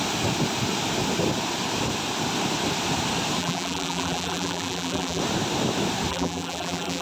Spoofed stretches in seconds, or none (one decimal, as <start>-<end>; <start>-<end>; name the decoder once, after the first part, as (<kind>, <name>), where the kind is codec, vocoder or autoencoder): 3.4-5.2 (vocoder, BigVGAN v2); 6.1-7.0